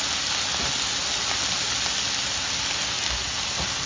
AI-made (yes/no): no